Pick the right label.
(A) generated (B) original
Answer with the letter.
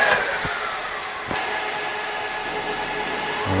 B